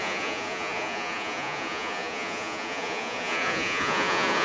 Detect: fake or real fake